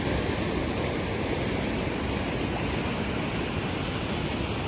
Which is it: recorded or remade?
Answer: recorded